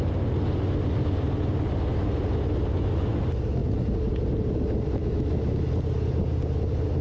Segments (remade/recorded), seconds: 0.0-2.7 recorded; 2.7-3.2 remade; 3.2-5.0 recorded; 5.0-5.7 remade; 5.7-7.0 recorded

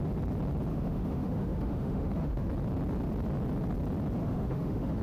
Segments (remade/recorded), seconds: 0.0-0.7 recorded; 0.7-2.5 remade; 2.5-4.2 recorded; 4.2-5.0 remade

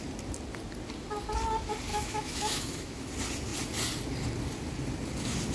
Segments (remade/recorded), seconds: 0.0-1.9 recorded; 1.9-3.1 remade; 3.1-5.5 recorded

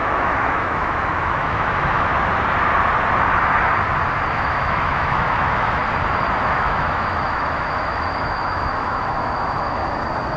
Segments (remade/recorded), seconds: 0.0-2.1 remade; 2.1-4.3 recorded; 4.3-5.8 remade; 5.8-6.4 recorded; 6.4-9.8 remade; 9.8-10.4 recorded

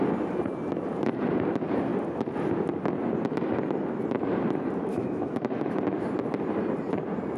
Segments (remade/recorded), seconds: 0.0-4.9 recorded; 4.9-6.0 remade; 6.0-7.4 recorded

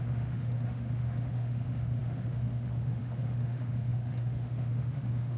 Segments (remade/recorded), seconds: 0.0-5.4 remade

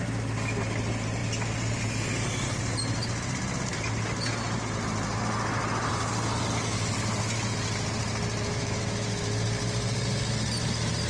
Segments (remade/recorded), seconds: 0.0-8.5 recorded; 8.5-9.2 remade; 9.2-11.1 recorded

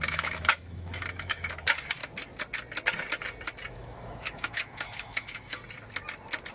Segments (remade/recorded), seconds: 0.0-2.0 remade; 2.0-3.7 recorded; 3.7-5.6 remade; 5.6-6.5 recorded